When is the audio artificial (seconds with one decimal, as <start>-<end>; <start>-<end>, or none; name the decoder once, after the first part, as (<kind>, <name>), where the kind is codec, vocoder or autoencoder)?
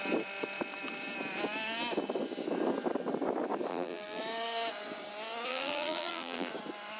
3.7-4.2 (vocoder, BigVGAN v2); 5.5-6.5